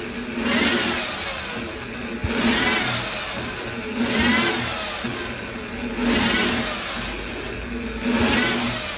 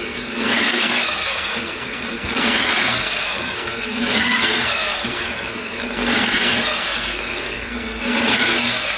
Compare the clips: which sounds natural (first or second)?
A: first